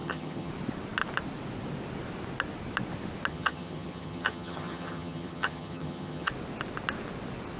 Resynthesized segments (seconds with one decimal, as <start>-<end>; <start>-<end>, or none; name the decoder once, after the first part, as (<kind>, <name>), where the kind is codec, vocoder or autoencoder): 0.0-0.5 (vocoder, HiFi-GAN); 3.3-6.3